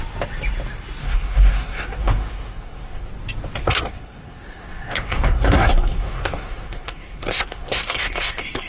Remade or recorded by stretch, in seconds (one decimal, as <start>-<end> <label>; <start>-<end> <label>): 0.0-1.0 recorded; 1.0-3.1 remade; 3.1-3.6 recorded; 3.6-8.7 remade